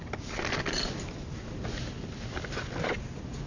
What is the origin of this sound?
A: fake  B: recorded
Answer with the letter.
B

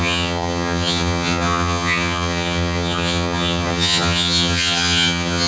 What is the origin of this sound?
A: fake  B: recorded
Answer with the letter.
A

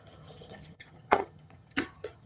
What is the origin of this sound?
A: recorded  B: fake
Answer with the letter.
B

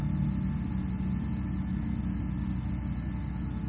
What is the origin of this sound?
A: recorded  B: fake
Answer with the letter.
A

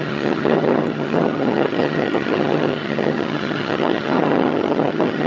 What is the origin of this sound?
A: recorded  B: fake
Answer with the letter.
B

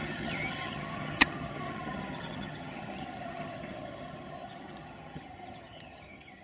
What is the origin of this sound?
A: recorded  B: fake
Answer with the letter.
B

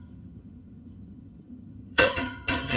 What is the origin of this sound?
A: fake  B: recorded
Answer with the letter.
A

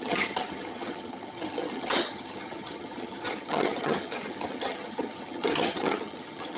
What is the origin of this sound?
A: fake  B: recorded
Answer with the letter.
A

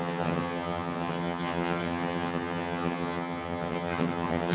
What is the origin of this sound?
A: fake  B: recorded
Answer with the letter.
A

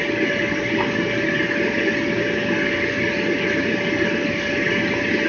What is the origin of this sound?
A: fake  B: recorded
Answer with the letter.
B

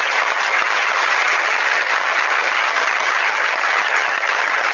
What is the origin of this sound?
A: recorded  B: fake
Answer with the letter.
B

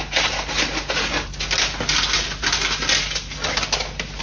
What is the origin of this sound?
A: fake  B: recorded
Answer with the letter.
B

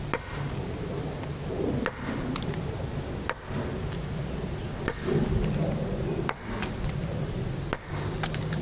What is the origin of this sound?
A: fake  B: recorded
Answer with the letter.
B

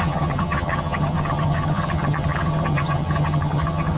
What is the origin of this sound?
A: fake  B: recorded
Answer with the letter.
A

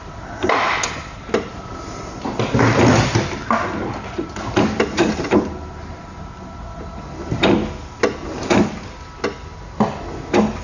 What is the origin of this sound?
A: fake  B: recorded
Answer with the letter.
B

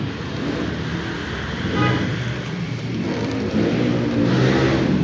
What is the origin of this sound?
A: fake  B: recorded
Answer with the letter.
B